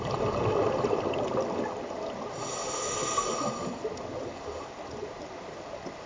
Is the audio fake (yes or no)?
no